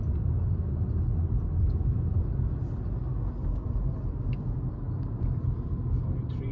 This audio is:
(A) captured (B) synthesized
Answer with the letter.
A